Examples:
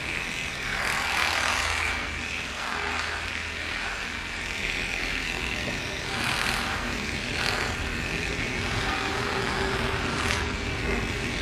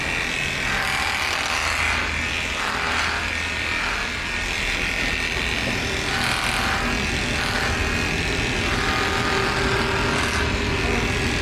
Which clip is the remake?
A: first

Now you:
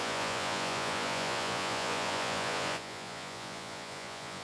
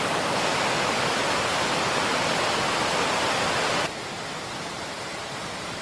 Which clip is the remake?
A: first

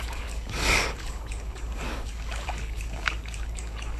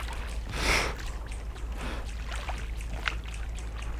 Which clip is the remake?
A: first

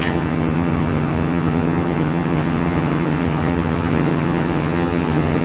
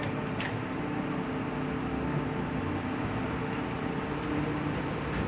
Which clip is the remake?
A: first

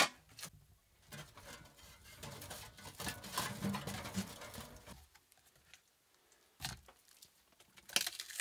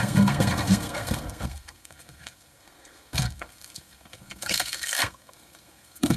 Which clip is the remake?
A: second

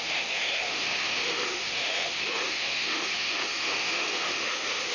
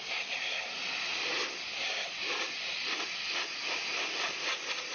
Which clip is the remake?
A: first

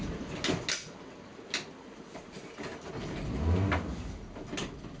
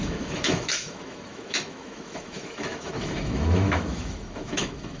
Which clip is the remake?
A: second